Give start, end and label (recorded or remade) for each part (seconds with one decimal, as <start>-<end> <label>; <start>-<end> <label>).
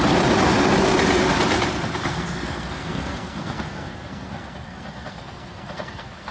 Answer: 0.0-2.1 recorded; 2.1-6.3 remade